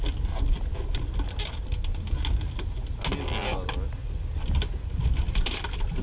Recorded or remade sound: recorded